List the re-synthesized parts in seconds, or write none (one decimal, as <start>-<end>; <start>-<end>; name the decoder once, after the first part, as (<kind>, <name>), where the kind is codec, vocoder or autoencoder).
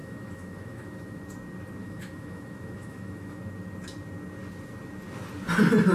0.0-1.2 (autoencoder, DAC-VAE); 1.8-3.4